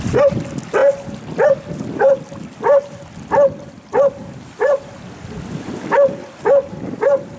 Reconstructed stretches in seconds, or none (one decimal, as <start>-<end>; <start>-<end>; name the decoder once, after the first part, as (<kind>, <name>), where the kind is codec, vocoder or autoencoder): none